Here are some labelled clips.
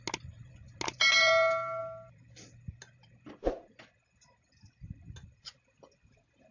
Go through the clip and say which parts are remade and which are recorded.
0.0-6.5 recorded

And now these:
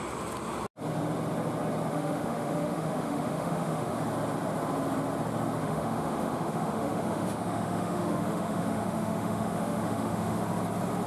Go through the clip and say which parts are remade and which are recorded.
0.0-1.9 recorded; 1.9-4.0 remade; 4.0-5.6 recorded; 5.6-10.4 remade; 10.4-11.1 recorded

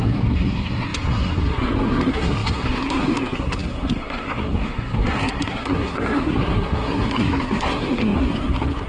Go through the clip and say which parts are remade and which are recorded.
0.0-8.9 remade

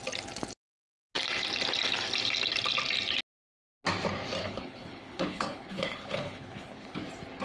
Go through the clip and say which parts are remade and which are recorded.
0.0-4.4 recorded; 4.4-7.0 remade; 7.0-7.4 recorded

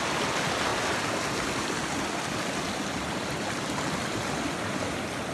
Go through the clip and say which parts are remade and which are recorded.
0.0-5.3 recorded

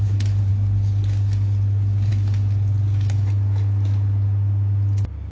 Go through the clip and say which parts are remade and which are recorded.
0.0-5.3 recorded

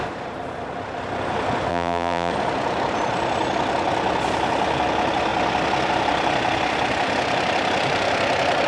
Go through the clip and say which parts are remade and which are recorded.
0.0-1.7 recorded; 1.7-2.3 remade; 2.3-8.7 recorded

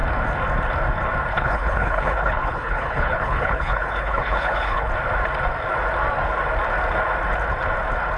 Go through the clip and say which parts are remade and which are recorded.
0.0-1.3 recorded; 1.3-4.9 remade; 4.9-8.2 recorded